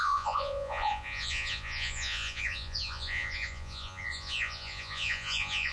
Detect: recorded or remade remade